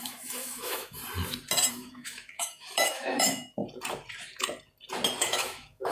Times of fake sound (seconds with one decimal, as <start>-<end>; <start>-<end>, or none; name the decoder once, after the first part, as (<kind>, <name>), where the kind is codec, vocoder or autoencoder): 0.0-1.0 (autoencoder, DAC-VAE); 1.7-3.6; 5.2-5.9